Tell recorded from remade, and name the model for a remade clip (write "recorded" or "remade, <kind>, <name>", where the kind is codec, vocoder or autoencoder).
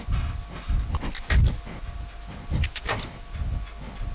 recorded